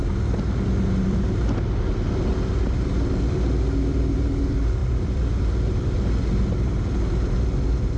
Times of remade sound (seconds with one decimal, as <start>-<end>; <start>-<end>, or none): 4.8-5.3